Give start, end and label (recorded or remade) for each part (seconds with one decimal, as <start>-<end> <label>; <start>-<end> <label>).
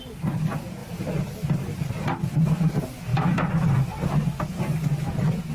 0.0-0.8 recorded; 0.8-1.9 remade; 1.9-5.5 recorded